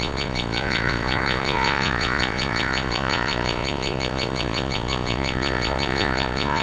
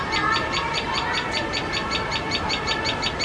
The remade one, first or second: first